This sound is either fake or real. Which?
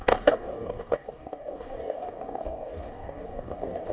fake